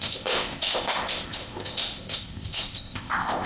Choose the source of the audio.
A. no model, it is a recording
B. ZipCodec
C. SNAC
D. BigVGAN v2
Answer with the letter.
B